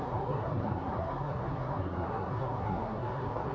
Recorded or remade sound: remade